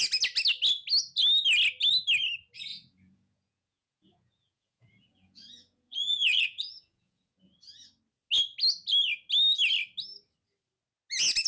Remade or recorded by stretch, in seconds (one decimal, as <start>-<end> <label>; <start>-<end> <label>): 0.0-2.7 recorded; 2.7-7.6 remade; 7.6-11.5 recorded

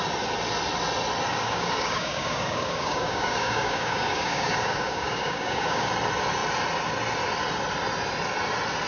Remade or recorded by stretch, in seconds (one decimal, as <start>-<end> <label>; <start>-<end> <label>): 0.0-1.3 recorded; 1.3-5.9 remade; 5.9-8.9 recorded